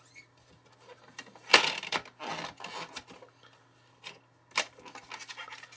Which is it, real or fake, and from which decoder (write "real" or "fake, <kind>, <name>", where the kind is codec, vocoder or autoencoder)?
real